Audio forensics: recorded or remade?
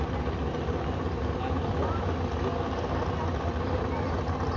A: recorded